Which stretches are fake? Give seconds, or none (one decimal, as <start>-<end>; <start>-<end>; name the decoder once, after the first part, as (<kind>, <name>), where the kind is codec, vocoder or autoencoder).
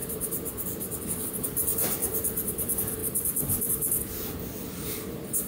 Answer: 1.0-5.5 (vocoder, BigVGAN v2)